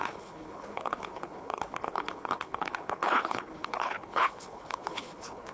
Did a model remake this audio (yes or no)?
yes